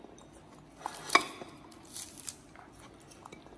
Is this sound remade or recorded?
recorded